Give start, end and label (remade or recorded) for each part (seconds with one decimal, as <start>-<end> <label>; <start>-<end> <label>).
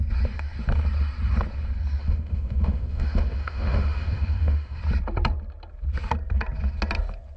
0.0-2.0 recorded; 2.0-4.8 remade; 4.8-7.4 recorded